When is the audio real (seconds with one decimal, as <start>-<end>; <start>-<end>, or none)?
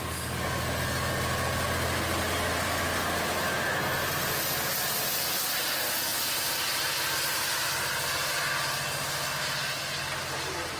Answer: 0.0-10.8